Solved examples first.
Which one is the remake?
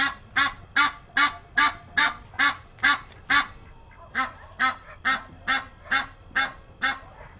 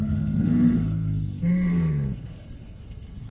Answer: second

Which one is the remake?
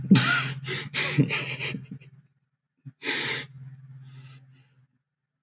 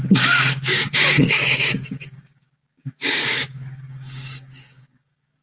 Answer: second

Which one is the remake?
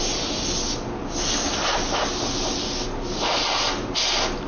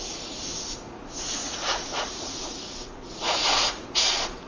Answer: second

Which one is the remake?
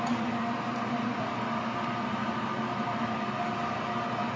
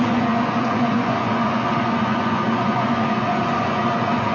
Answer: second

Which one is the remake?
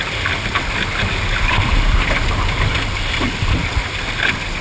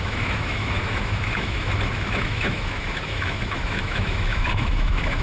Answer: second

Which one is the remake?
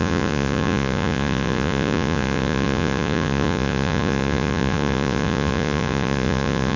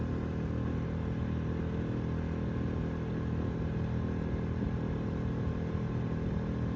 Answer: first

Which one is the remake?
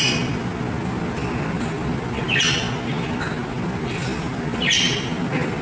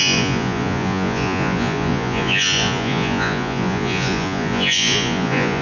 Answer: second